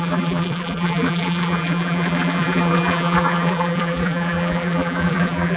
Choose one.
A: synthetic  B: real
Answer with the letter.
A